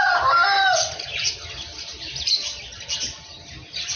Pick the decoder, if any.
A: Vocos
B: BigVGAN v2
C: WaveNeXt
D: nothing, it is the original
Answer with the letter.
D